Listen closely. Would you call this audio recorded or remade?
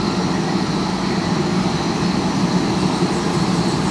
recorded